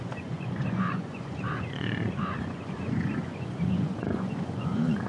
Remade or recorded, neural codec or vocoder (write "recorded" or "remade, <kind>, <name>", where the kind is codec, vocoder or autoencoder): remade, vocoder, Vocos